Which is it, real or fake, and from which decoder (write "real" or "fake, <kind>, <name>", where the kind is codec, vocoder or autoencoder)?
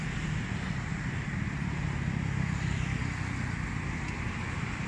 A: real